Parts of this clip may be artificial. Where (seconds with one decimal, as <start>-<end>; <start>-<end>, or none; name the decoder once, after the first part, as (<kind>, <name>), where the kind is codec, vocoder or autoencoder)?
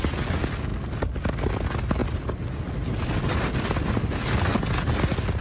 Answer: none